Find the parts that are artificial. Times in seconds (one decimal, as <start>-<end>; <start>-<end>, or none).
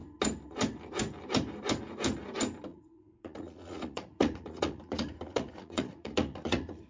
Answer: 2.7-6.9